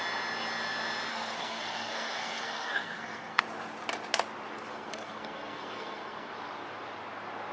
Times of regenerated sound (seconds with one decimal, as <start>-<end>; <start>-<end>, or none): 1.1-3.4; 4.7-6.3